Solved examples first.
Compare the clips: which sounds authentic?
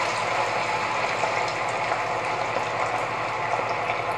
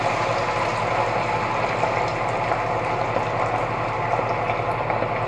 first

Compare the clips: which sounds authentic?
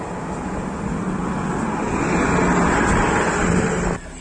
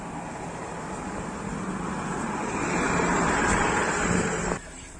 first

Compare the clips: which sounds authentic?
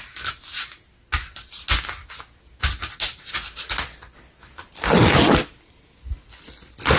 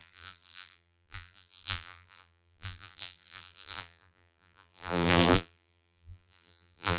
first